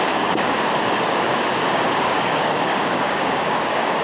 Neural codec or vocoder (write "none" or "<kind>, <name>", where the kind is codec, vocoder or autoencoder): codec, DAC